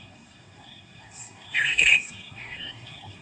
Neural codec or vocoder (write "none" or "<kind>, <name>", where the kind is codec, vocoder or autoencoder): codec, SNAC